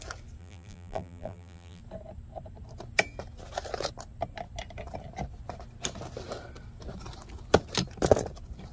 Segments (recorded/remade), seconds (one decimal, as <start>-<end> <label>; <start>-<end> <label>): 0.0-0.4 recorded; 0.4-1.8 remade; 1.8-8.7 recorded